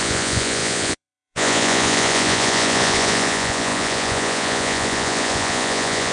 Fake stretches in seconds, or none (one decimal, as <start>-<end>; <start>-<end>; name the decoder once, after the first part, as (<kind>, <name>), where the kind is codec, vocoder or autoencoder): 0.0-6.1 (vocoder, Vocos)